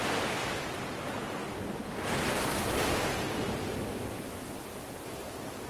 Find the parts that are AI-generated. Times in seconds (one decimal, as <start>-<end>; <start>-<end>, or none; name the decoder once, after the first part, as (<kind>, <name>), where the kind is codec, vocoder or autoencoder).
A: none